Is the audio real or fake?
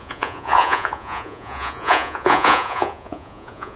fake